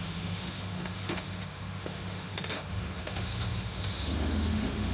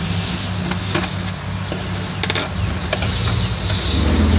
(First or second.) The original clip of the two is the second